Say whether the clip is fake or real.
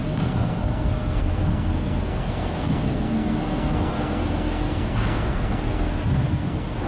fake